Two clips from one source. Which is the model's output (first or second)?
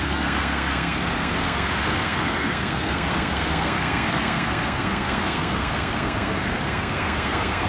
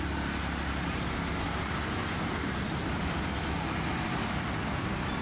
first